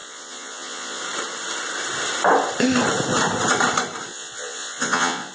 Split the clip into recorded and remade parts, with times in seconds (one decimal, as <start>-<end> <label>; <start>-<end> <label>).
0.0-1.0 remade; 1.0-4.1 recorded; 4.1-5.3 remade